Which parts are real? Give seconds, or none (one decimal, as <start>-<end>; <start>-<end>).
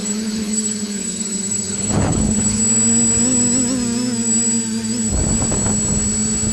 2.6-6.5